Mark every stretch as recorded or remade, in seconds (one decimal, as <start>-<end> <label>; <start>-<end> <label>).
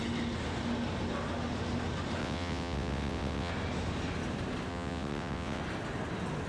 0.0-2.2 recorded; 2.2-3.5 remade; 3.5-4.7 recorded; 4.7-5.6 remade; 5.6-6.5 recorded